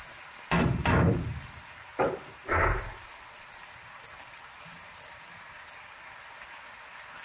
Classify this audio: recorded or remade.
recorded